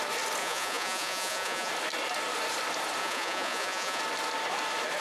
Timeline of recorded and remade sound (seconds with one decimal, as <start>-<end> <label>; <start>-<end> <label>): 0.0-0.4 recorded; 0.4-1.7 remade; 1.7-3.0 recorded; 3.0-4.0 remade; 4.0-5.0 recorded